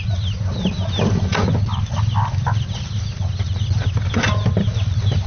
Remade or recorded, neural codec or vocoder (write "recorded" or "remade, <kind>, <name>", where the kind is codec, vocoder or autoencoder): recorded